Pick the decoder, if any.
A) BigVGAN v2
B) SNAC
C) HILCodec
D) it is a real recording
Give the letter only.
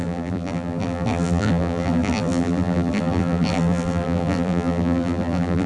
A